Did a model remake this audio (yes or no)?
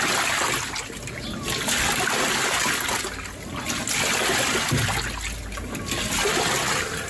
no